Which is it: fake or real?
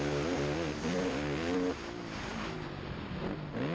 real